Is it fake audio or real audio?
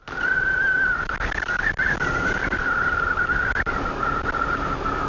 real